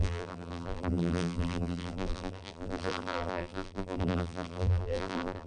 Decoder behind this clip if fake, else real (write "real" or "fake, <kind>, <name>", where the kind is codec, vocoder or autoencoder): fake, vocoder, BigVGAN v2